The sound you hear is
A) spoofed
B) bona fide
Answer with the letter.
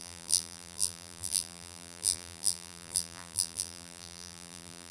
A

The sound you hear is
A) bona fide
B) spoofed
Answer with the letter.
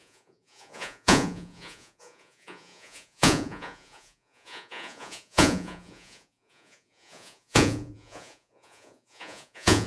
B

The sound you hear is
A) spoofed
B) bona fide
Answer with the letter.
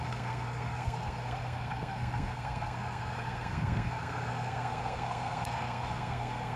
A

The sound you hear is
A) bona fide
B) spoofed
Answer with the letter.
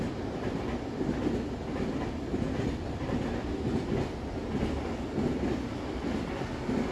A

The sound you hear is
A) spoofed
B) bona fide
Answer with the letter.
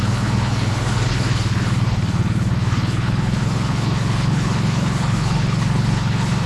A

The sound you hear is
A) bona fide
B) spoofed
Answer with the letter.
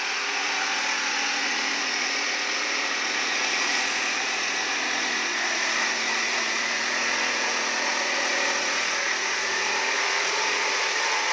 B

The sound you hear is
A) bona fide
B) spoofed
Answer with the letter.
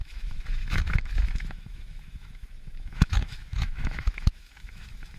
B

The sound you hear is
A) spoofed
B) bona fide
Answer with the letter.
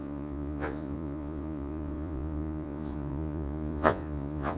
A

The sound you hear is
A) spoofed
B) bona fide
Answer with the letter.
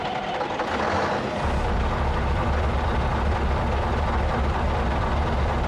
B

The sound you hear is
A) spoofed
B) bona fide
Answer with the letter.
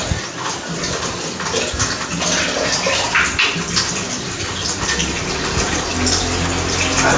B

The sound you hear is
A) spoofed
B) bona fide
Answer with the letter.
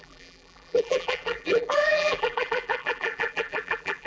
A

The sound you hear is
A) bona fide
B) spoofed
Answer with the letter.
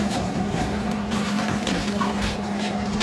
B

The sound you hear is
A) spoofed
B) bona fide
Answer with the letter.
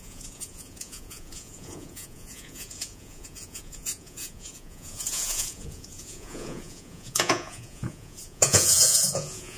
A